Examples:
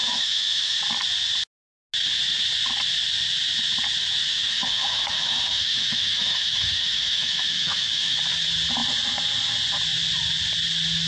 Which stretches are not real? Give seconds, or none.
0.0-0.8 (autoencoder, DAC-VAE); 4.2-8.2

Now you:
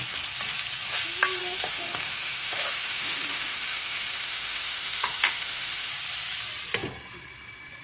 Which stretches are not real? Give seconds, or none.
1.4-5.9 (autoencoder, DAC-VAE)

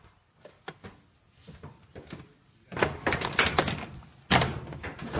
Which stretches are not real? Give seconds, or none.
none

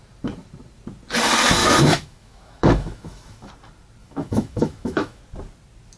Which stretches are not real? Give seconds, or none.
1.6-3.5 (autoencoder, DAC-VAE); 4.0-5.2

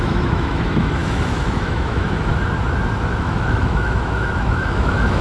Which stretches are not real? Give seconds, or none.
0.0-2.3 (autoencoder, DAC-VAE); 3.2-5.2

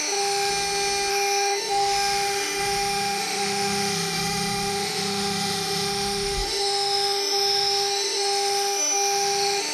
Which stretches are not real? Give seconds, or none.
0.0-0.5 (autoencoder, DAC-VAE); 1.1-9.7

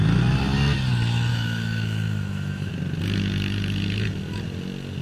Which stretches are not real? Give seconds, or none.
1.3-2.7 (autoencoder, DAC-VAE)